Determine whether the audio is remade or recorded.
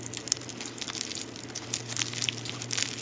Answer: recorded